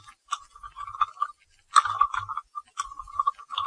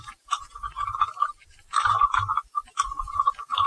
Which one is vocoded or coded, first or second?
second